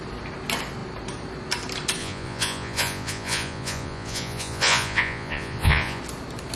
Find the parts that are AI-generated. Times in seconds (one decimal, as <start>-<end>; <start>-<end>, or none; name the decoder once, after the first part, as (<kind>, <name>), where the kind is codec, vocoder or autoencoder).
2.0-6.0 (vocoder, Vocos)